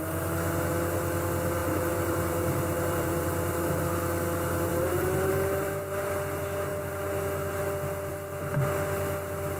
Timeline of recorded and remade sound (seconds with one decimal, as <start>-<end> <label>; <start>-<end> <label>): 0.0-1.6 recorded; 1.6-3.8 remade; 3.8-4.7 recorded; 4.7-6.1 remade; 6.1-9.6 recorded